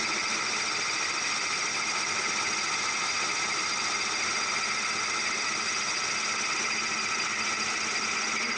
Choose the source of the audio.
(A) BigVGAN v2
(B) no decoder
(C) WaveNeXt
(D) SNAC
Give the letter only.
B